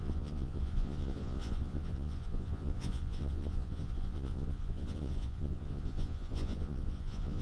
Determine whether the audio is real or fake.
fake